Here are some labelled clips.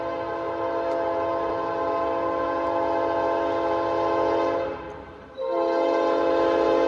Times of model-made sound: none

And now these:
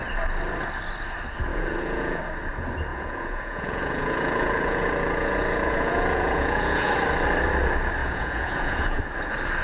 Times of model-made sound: 1.5-2.2 (vocoder, Vocos); 2.9-6.9; 8.0-9.0

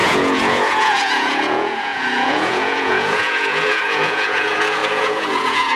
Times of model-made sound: 0.0-5.8 (vocoder, Vocos)

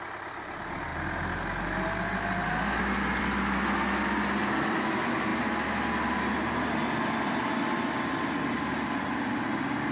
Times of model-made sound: none

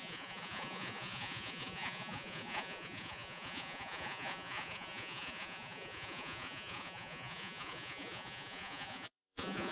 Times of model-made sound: 0.0-9.7 (vocoder, Vocos)

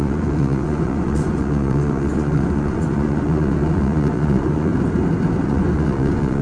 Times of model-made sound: 0.0-4.7 (vocoder, Vocos); 5.4-6.4